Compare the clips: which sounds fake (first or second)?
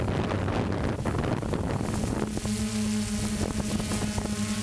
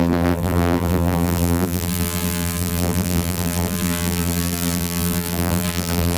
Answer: second